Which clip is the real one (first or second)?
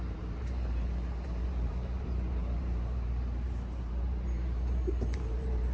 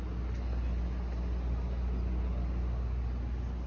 second